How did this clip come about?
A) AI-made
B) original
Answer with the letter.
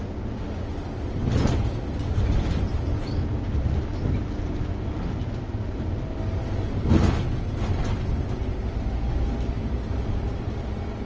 B